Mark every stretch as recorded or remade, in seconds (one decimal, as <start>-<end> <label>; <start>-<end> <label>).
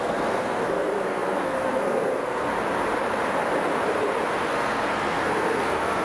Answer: 0.0-2.5 remade; 2.5-4.5 recorded; 4.5-6.0 remade